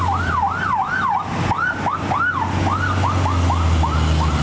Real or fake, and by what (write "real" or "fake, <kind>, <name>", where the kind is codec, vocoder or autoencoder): real